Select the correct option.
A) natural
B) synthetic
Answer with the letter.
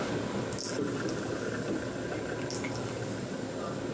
A